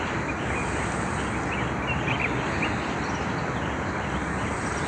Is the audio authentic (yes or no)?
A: yes